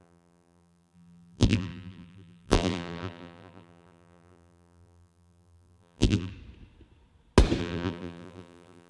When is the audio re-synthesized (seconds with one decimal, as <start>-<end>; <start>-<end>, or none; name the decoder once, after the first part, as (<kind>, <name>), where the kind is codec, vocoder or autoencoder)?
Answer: 0.0-6.3 (vocoder, BigVGAN v2); 7.6-8.9